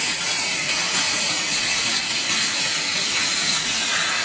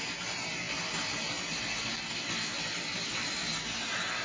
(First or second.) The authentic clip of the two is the second